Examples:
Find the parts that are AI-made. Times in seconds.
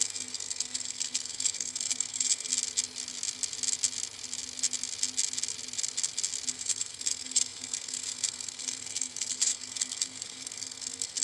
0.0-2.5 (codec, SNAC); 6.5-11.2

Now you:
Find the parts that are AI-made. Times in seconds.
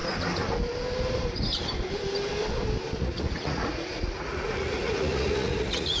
3.0-6.0 (vocoder, Vocos)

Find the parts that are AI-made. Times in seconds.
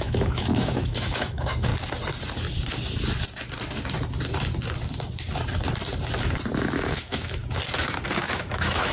0.0-1.7 (autoencoder, DAC-VAE); 6.6-7.4; 8.2-8.9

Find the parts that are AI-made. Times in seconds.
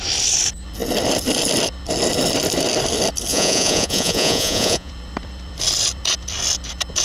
3.3-4.9 (vocoder, Vocos)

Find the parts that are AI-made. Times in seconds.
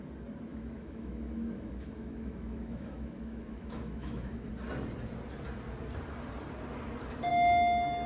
0.5-4.5 (autoencoder, DAC-VAE); 7.3-8.1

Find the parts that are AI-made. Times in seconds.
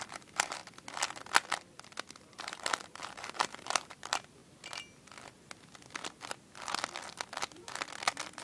0.0-0.6 (vocoder, BigVGAN v2); 2.2-4.4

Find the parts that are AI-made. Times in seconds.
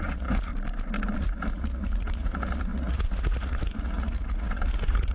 0.0-0.5 (vocoder, Vocos); 1.2-5.1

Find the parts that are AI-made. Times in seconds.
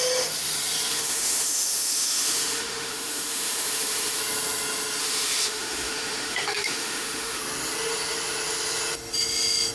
0.9-4.2 (autoencoder, DAC-VAE); 5.0-7.4